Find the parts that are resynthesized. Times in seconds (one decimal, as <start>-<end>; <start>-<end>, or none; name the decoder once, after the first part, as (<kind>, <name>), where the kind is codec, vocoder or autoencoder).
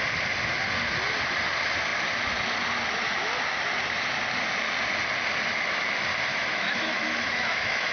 6.3-7.9 (autoencoder, DAC-VAE)